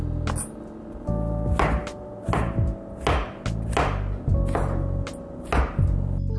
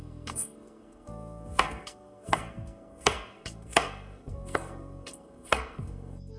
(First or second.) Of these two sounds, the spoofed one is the second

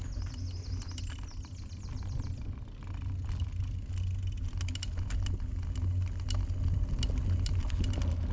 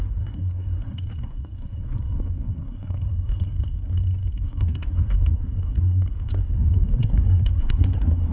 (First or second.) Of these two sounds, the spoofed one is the second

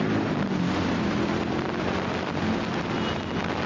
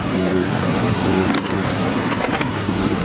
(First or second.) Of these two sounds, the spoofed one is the second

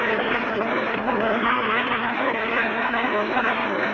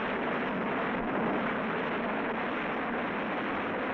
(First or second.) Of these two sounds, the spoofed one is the first